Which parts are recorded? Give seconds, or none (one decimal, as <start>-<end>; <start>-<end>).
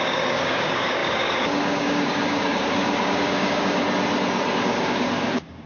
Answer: 3.8-4.6